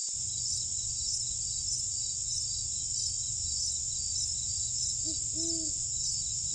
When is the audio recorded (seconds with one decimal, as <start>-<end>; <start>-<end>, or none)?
0.0-6.5